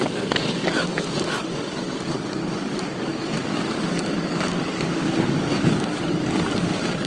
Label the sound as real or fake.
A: fake